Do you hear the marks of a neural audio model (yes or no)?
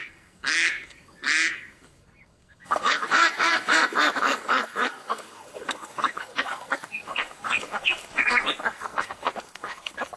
yes